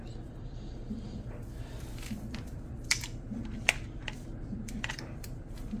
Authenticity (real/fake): fake